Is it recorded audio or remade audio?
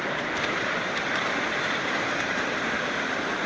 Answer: remade